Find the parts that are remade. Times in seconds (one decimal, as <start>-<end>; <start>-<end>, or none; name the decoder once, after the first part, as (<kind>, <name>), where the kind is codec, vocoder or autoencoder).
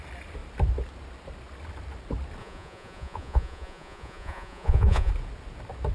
2.4-5.1 (vocoder, Vocos)